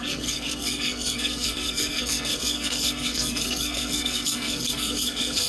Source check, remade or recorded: remade